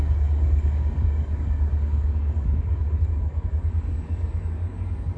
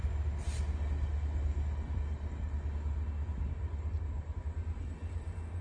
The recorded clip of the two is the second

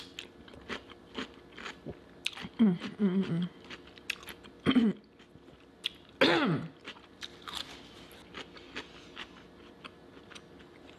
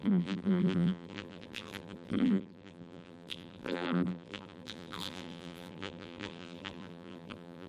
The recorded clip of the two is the first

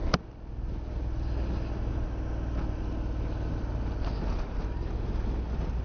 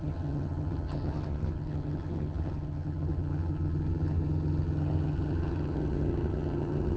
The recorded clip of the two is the first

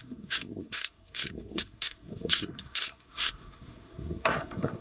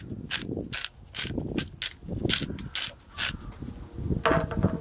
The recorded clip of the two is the second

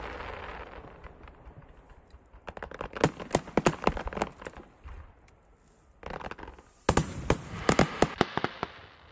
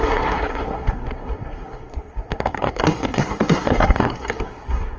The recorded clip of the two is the first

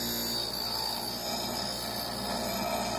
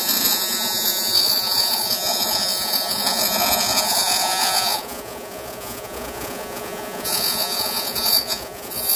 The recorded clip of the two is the first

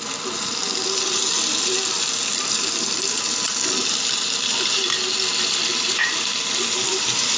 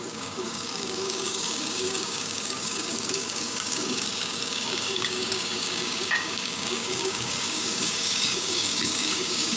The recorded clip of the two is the first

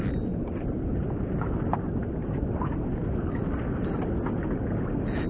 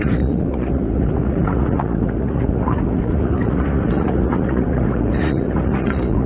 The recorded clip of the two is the first